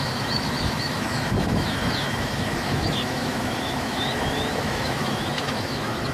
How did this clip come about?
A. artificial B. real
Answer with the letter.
A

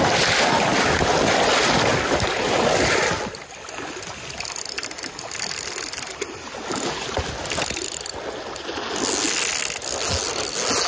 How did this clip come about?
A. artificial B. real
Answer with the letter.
B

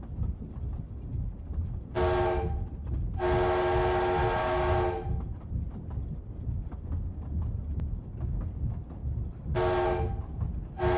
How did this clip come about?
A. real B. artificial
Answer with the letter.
A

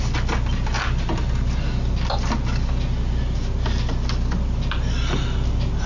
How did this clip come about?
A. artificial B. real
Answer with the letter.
B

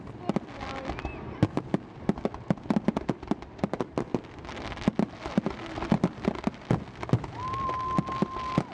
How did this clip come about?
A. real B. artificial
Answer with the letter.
A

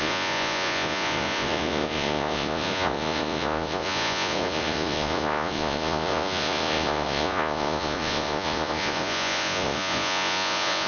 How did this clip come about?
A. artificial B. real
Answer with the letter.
A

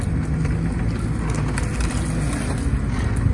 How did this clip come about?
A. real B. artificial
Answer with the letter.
A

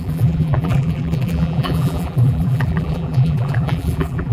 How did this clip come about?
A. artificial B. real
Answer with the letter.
A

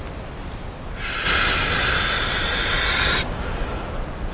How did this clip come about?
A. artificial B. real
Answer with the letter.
B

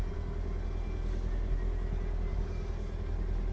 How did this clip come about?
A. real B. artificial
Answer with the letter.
A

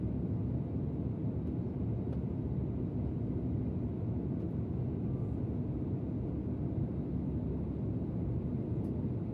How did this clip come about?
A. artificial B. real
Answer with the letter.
B